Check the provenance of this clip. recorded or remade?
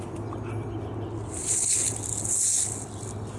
recorded